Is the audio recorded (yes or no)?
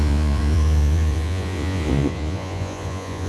no